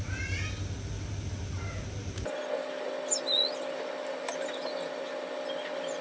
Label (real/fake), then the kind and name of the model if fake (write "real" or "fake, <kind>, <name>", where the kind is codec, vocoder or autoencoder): real